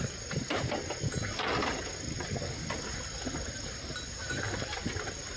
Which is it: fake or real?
real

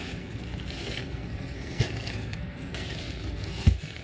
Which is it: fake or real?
fake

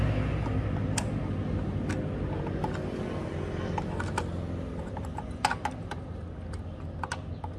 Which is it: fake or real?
real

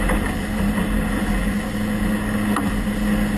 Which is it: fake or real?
real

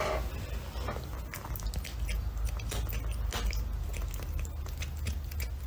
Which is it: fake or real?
real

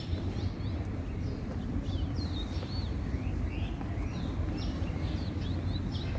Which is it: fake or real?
real